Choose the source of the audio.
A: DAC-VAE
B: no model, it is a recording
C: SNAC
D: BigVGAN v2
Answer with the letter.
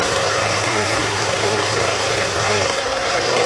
C